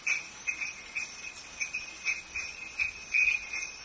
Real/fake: real